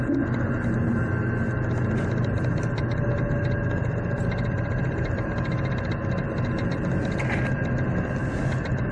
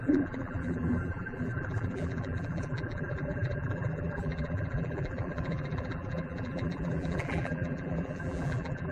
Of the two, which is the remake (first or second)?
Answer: second